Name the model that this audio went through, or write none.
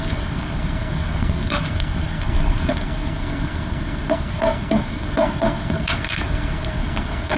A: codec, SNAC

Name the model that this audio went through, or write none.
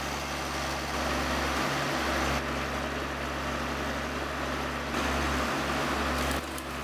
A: none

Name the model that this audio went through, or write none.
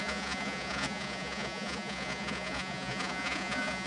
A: vocoder, Vocos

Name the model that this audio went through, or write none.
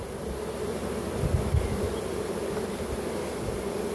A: none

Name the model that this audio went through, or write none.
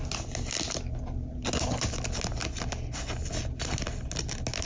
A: none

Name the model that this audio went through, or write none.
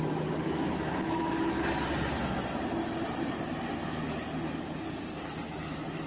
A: none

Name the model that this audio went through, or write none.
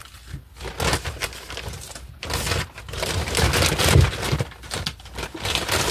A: none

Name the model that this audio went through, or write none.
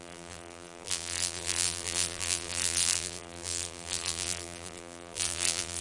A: vocoder, BigVGAN v2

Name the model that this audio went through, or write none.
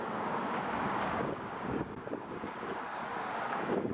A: codec, DAC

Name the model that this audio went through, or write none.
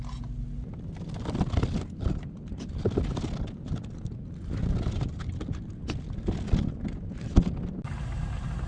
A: none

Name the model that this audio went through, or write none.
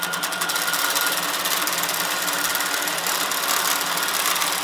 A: none